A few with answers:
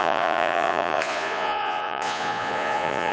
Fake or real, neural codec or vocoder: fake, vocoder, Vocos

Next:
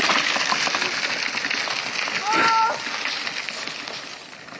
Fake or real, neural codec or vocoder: real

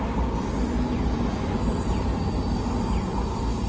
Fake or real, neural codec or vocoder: real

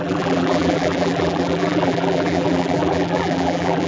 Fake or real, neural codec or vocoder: fake, vocoder, BigVGAN v2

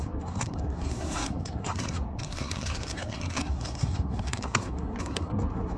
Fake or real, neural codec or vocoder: fake, codec, SNAC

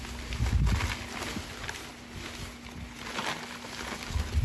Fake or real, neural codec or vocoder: real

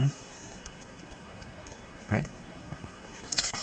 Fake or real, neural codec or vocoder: fake, codec, SNAC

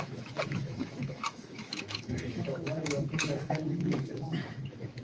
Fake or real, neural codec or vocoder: fake, autoencoder, DAC-VAE